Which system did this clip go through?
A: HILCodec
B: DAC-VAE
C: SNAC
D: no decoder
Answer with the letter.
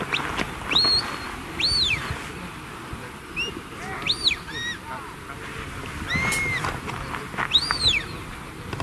D